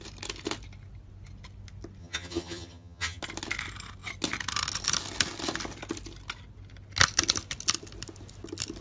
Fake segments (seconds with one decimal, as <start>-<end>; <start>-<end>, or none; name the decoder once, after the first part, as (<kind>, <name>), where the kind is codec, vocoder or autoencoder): 2.0-3.2 (vocoder, HiFi-GAN)